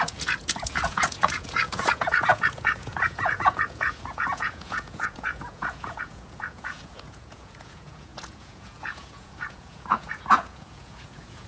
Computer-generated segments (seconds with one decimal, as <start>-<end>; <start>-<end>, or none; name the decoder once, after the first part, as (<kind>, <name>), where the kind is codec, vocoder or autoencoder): 0.0-11.5 (vocoder, Vocos)